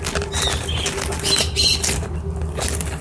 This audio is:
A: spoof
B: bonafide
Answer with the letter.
B